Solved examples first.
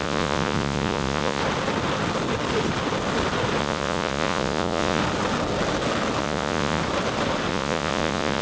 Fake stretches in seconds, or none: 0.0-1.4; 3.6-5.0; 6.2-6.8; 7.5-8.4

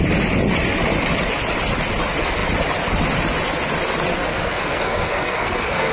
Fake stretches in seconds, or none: 4.3-5.9

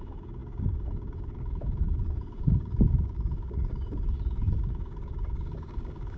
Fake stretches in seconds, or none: 0.0-6.2

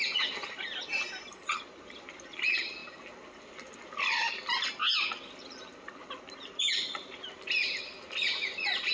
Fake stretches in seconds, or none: 0.0-2.8; 3.4-4.8; 6.4-8.9

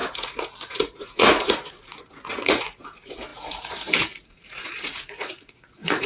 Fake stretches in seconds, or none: 0.0-6.1

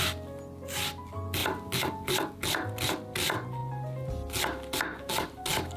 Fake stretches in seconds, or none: none

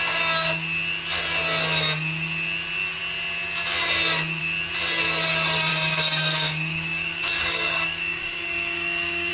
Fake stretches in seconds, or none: 5.7-9.3